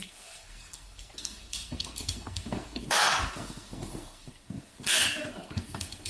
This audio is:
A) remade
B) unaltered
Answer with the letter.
A